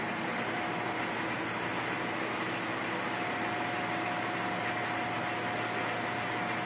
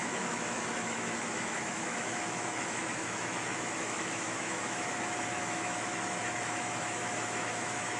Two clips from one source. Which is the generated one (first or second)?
second